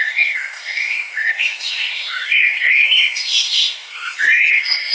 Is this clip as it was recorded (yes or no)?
no